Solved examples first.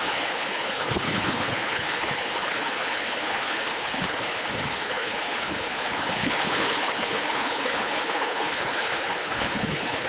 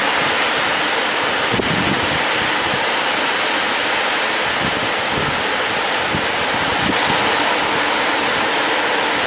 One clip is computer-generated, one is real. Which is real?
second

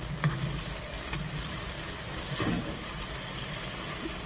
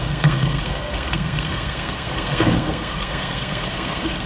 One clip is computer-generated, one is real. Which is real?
first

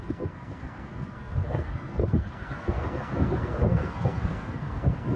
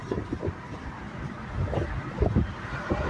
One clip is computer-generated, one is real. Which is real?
second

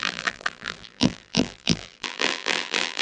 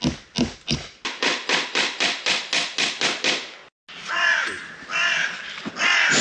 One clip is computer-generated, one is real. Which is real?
second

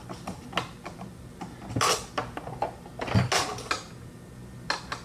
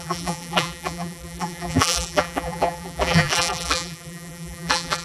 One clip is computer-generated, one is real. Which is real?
first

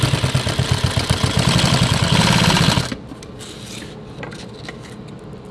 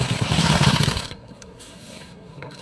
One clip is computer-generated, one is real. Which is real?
first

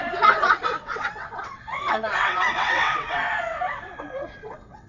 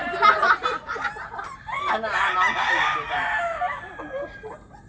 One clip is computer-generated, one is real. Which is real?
second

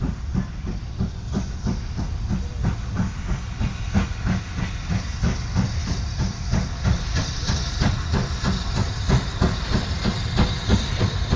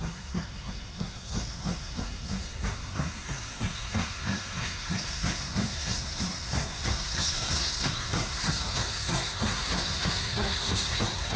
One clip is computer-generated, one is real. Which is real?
first